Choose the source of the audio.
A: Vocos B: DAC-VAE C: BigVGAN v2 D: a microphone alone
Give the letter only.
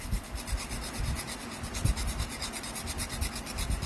D